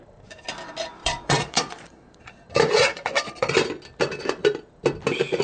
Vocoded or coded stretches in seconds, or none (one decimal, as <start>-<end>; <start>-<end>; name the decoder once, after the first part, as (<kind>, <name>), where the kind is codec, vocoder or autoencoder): 1.0-2.3 (vocoder, Vocos); 2.9-3.5